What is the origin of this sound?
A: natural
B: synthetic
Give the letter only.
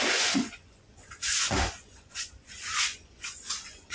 B